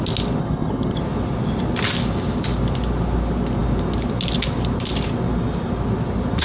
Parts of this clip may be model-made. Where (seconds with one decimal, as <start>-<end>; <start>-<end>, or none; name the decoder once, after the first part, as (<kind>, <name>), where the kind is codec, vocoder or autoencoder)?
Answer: 0.4-1.0 (vocoder, HiFi-GAN)